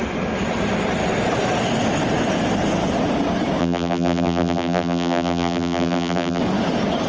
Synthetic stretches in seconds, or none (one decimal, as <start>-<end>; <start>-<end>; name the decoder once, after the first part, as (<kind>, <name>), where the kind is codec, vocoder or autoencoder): 3.6-6.4 (vocoder, BigVGAN v2)